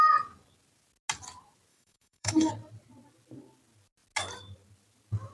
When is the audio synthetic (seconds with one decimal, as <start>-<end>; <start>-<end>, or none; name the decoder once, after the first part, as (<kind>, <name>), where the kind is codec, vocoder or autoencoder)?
1.7-2.5 (autoencoder, DAC-VAE)